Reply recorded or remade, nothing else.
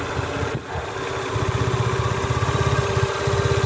recorded